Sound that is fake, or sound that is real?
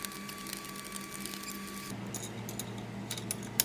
real